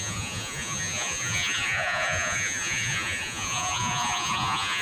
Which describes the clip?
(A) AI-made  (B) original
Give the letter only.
A